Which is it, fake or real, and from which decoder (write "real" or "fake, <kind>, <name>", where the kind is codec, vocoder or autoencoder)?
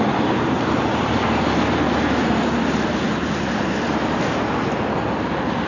real